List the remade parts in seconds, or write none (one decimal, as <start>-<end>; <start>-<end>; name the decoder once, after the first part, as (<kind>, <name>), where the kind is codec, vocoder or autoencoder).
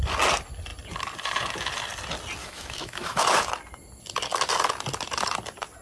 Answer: 2.4-3.5 (autoencoder, DAC-VAE)